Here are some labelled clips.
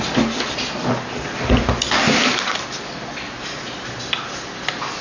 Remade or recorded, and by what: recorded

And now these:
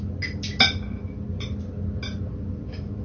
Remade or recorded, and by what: recorded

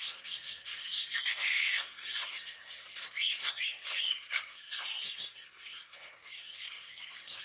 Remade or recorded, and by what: remade, codec, SNAC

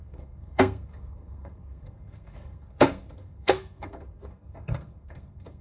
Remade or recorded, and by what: remade, codec, SNAC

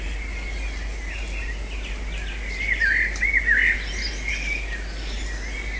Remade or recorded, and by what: recorded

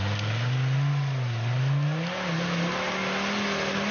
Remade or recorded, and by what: recorded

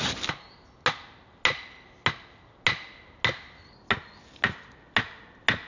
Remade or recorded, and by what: recorded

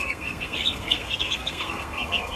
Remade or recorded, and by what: remade, codec, SNAC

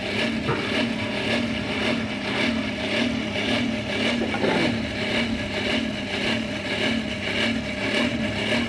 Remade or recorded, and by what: recorded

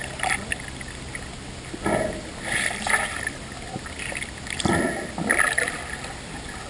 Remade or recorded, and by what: recorded